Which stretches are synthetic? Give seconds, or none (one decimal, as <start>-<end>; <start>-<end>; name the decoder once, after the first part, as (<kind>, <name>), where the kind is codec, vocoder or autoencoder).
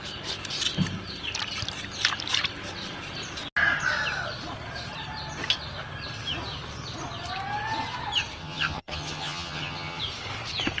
8.4-10.0 (vocoder, HiFi-GAN)